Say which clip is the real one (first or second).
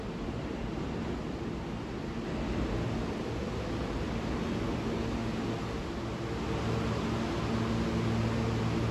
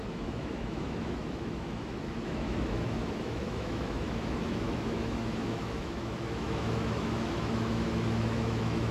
first